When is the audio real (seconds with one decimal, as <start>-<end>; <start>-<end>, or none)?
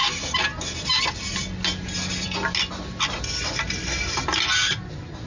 0.0-5.3